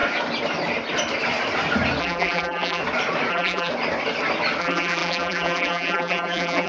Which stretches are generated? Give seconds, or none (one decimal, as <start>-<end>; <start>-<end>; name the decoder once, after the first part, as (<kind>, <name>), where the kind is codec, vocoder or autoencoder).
2.0-2.8 (vocoder, BigVGAN v2); 3.3-3.7; 4.6-6.7